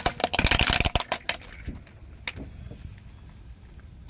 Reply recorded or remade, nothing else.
recorded